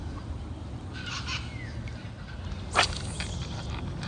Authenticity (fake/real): real